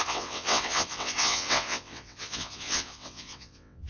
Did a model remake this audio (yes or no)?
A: yes